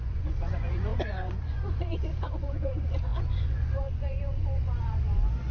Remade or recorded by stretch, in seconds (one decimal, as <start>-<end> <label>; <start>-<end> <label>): 0.0-5.5 remade